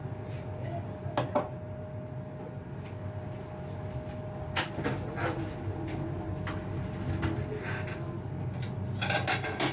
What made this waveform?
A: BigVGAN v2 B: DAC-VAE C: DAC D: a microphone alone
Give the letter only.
D